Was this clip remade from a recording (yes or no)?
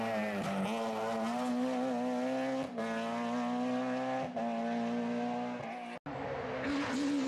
no